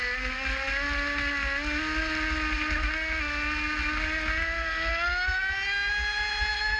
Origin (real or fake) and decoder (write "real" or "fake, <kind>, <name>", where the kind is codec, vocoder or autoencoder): real